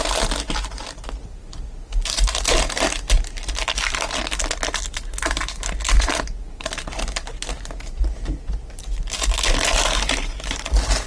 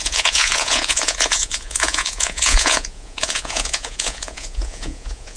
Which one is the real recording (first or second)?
first